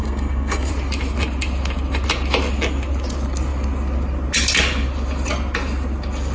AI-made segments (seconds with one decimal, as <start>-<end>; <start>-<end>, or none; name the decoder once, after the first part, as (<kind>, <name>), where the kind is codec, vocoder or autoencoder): 0.0-0.7 (codec, SNAC)

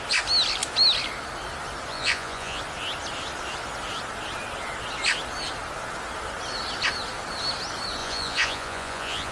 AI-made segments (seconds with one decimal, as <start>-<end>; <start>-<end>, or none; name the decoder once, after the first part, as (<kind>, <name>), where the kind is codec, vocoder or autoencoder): 1.9-2.6 (vocoder, Vocos); 8.0-9.3

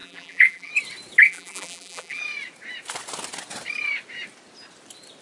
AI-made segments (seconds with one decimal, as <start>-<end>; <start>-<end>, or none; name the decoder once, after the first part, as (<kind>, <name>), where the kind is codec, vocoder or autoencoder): 0.0-0.7 (vocoder, BigVGAN v2); 1.2-2.2

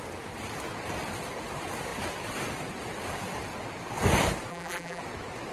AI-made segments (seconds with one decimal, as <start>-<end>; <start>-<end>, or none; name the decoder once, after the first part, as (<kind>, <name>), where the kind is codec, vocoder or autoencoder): 4.5-5.0 (vocoder, BigVGAN v2)

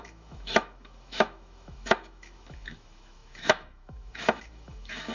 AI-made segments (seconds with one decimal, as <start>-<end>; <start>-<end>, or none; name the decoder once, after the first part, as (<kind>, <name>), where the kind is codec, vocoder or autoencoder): 0.0-5.1 (autoencoder, DAC-VAE)

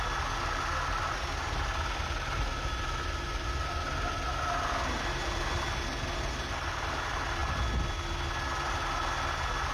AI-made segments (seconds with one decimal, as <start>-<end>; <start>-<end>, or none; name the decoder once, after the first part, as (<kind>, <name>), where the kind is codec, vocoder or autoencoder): none

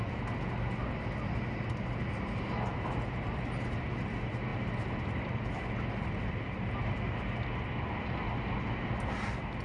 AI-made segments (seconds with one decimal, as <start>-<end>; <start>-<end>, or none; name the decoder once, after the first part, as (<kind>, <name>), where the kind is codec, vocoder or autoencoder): none